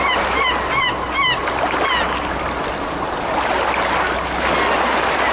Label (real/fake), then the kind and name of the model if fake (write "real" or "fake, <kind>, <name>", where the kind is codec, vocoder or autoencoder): real